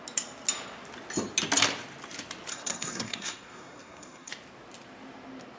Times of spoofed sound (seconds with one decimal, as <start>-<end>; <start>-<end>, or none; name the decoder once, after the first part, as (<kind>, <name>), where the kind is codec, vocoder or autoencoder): 2.5-4.3 (codec, SNAC)